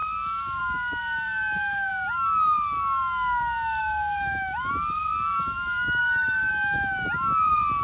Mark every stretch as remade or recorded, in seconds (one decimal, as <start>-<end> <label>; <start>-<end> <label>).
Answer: 0.0-3.8 recorded; 3.8-4.7 remade; 4.7-6.0 recorded; 6.0-6.5 remade; 6.5-7.8 recorded

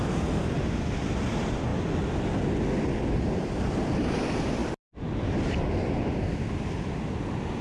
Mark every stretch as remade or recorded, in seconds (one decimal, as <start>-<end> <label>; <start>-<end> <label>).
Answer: 0.0-7.6 recorded

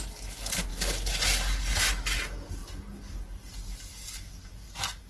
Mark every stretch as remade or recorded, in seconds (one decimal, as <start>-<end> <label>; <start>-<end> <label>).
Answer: 0.0-5.1 recorded

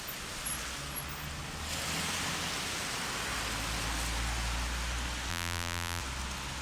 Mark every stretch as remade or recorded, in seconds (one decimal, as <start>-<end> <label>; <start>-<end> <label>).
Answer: 0.0-5.3 recorded; 5.3-6.0 remade; 6.0-6.6 recorded

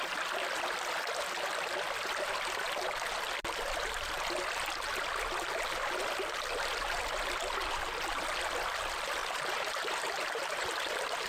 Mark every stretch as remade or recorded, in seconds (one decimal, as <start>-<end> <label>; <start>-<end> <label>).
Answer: 0.0-9.2 recorded; 9.2-10.7 remade; 10.7-11.3 recorded

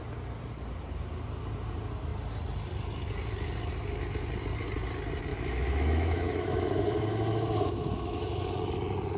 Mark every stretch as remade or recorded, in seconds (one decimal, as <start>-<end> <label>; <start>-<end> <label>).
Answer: 0.0-5.3 recorded; 5.3-8.7 remade; 8.7-9.2 recorded

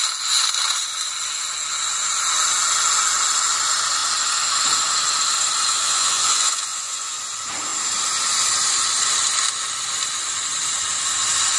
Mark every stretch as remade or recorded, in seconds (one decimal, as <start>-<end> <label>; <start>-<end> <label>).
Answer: 0.0-5.7 recorded; 5.7-7.2 remade; 7.2-11.6 recorded